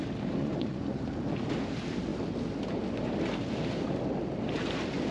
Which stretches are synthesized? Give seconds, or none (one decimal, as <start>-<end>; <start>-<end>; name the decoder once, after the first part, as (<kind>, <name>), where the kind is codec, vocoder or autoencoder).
0.4-1.0 (vocoder, Vocos)